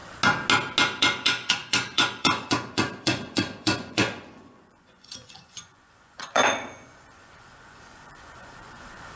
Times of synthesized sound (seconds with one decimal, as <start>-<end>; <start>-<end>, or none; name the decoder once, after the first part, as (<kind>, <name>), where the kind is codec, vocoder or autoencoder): 1.0-9.2 (vocoder, Vocos)